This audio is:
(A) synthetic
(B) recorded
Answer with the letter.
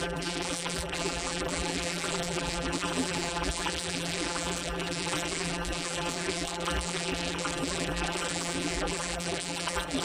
A